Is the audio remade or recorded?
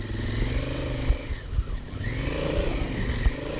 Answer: recorded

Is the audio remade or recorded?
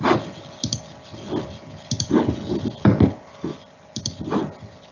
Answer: recorded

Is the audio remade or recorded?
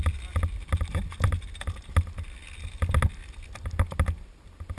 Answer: recorded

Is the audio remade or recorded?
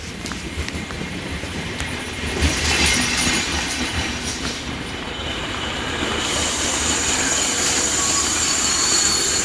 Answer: remade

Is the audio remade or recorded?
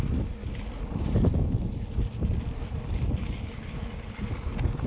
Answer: recorded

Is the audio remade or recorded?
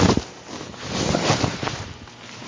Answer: recorded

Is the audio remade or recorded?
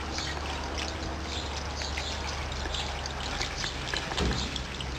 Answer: recorded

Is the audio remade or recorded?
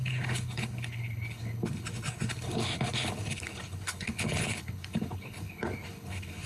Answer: remade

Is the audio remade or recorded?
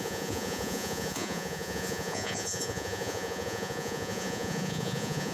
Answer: remade